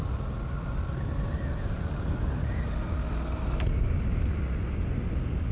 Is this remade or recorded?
recorded